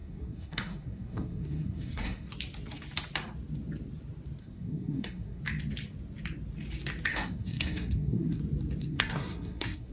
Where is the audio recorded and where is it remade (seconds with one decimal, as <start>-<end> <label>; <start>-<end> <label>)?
0.0-2.3 remade; 2.3-4.4 recorded; 4.4-5.4 remade; 5.4-7.1 recorded; 7.1-8.4 remade; 8.4-8.8 recorded; 8.8-9.9 remade